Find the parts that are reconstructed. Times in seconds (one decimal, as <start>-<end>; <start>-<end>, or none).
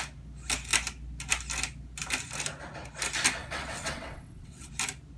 3.4-4.7